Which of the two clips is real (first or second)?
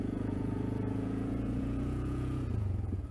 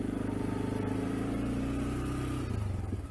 second